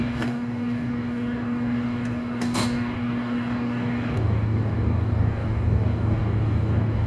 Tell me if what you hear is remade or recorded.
remade